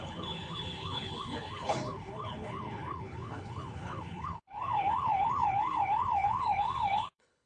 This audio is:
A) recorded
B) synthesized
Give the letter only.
B